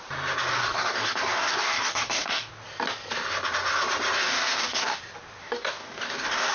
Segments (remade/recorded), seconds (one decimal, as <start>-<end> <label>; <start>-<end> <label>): 0.0-0.5 recorded; 0.5-2.5 remade; 2.5-4.2 recorded; 4.2-5.0 remade; 5.0-5.4 recorded; 5.4-6.5 remade